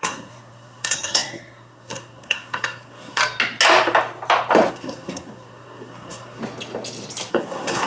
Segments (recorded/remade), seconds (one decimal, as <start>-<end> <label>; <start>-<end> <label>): 0.0-3.2 remade; 3.2-4.7 recorded; 4.7-6.4 remade; 6.4-7.3 recorded; 7.3-7.9 remade